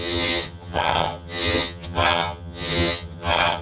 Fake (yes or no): yes